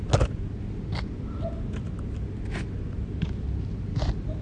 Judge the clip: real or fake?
real